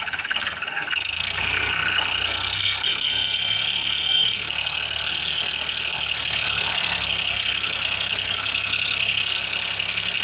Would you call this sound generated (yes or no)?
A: yes